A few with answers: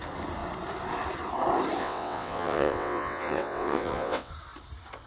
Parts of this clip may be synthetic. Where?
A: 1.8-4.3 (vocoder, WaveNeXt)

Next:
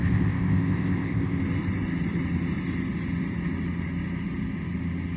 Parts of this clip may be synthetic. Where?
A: 0.0-1.4 (codec, ZipCodec)

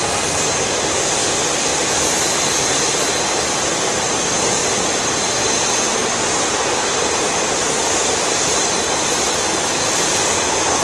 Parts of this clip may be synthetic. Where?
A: none

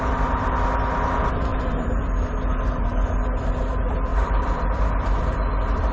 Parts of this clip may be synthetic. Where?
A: 1.5-2.0 (vocoder, BigVGAN v2); 4.1-4.9

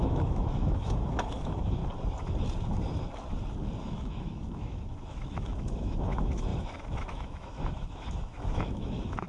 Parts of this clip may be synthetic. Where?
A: 0.0-1.8 (autoencoder, DAC-VAE); 3.8-9.3